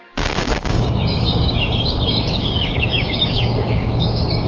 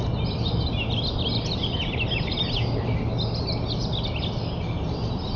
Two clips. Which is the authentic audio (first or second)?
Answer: second